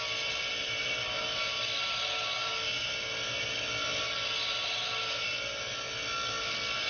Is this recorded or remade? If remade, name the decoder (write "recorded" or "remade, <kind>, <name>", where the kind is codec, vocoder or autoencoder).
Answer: recorded